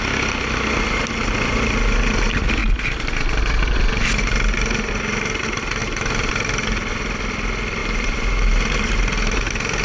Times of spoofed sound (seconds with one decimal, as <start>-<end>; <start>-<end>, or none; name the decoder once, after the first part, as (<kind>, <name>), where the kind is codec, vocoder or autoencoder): 5.8-6.3 (vocoder, BigVGAN v2); 7.8-9.8